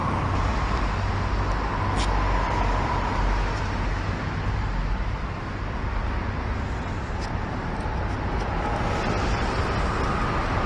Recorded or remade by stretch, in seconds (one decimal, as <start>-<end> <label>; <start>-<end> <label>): 0.0-10.7 recorded